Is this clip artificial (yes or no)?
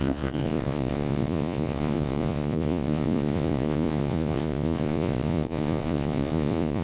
yes